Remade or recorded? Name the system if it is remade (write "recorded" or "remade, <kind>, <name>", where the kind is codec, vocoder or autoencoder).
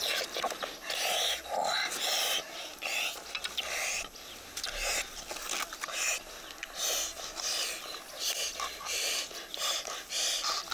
recorded